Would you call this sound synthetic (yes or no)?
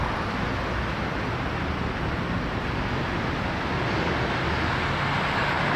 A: no